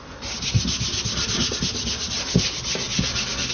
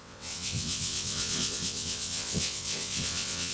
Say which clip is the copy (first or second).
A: second